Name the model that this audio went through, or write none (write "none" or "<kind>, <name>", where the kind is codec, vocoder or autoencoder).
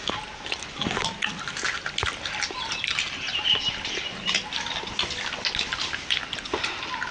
none